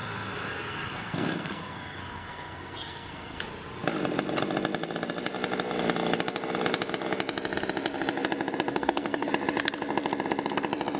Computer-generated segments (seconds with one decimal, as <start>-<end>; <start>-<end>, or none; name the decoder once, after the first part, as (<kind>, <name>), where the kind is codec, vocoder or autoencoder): 0.0-3.4 (codec, SNAC); 8.7-9.3